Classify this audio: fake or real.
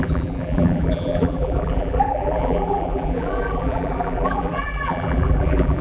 fake